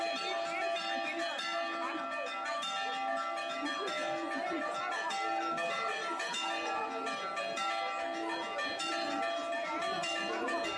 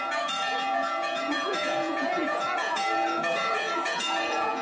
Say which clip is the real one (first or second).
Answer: first